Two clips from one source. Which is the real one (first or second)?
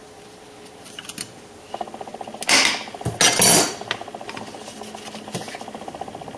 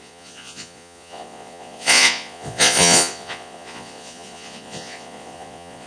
first